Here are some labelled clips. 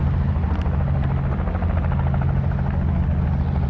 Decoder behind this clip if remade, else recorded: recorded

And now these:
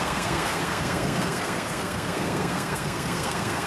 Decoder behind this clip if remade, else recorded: remade, codec, SNAC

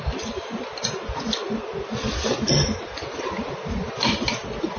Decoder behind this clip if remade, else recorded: recorded